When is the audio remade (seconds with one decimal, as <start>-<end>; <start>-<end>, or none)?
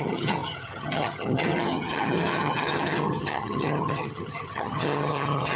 0.0-5.6